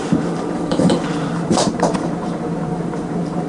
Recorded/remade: remade